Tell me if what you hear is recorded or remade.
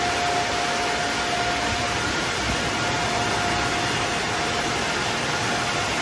recorded